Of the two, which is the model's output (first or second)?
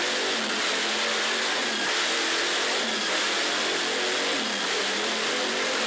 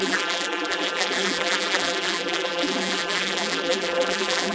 second